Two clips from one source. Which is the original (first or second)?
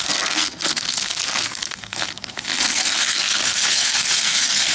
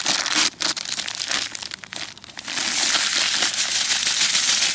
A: second